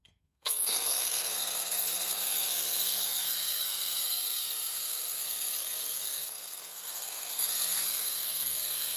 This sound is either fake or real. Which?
fake